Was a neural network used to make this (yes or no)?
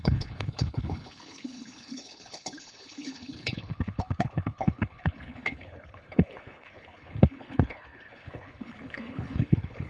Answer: yes